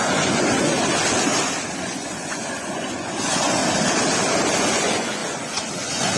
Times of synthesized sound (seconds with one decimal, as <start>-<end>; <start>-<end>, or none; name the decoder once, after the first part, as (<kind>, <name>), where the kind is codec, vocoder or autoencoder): 0.0-0.7 (vocoder, Vocos); 1.8-3.6; 4.6-6.2